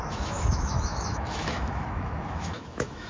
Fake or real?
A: fake